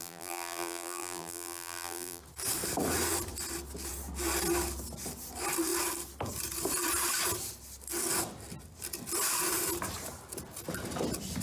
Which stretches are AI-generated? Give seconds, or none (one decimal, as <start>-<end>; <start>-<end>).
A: 0.0-2.2